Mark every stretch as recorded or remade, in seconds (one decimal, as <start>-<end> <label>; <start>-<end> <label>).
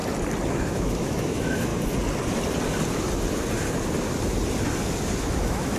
0.0-0.5 recorded; 0.5-1.7 remade; 1.7-5.2 recorded; 5.2-5.8 remade